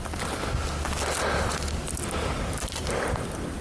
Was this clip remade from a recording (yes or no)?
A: no